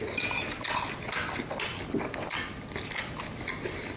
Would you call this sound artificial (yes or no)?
no